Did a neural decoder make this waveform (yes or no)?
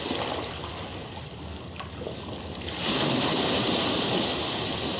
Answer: no